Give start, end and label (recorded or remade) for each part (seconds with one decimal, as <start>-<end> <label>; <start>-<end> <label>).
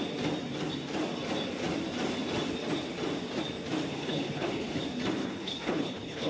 0.0-3.9 recorded; 3.9-4.8 remade; 4.8-5.2 recorded; 5.2-6.3 remade